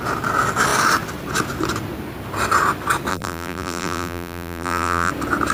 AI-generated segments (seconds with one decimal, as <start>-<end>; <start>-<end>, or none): 3.1-5.1